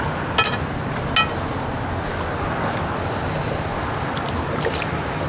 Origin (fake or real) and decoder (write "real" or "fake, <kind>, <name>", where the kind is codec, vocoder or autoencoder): real